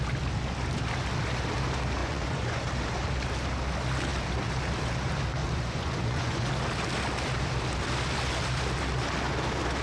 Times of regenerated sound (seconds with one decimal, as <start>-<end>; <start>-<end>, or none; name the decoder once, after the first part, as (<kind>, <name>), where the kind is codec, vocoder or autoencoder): 2.0-2.6 (vocoder, Vocos); 5.4-6.5